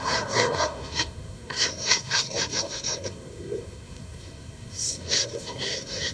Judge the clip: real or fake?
fake